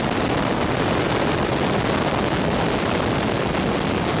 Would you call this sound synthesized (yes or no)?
no